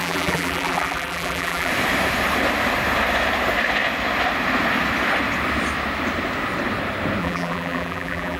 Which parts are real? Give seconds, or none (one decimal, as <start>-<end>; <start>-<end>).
1.7-7.2